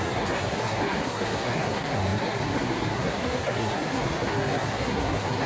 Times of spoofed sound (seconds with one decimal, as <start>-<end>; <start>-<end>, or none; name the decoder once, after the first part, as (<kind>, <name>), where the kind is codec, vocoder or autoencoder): 0.0-5.5 (codec, SNAC)

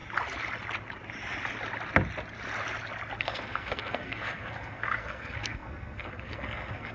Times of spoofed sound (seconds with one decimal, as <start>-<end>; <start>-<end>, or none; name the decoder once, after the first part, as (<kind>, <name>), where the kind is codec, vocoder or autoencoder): 3.2-6.9 (codec, SNAC)

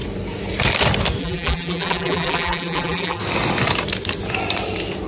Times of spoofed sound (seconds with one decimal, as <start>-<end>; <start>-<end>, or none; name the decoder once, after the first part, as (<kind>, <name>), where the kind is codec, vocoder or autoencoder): 1.2-3.2 (vocoder, BigVGAN v2)

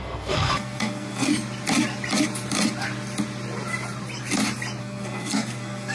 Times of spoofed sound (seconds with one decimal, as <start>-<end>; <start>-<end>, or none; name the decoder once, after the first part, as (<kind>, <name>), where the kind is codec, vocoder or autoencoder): 0.0-1.3 (codec, SNAC); 4.8-5.9

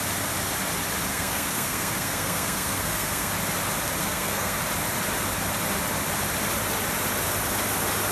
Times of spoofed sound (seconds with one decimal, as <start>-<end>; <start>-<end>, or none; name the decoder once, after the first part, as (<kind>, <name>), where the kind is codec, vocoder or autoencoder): 1.1-3.3 (codec, SNAC); 4.0-4.6

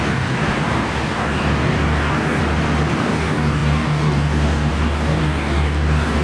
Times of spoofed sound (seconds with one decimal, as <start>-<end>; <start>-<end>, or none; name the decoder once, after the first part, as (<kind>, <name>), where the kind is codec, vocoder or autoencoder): 0.0-2.4 (codec, DAC); 3.0-6.2